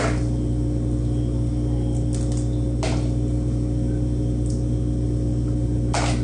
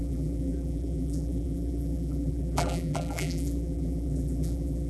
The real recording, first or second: first